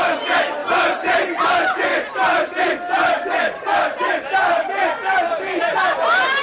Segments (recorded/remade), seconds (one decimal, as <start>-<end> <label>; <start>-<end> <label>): 0.0-6.4 recorded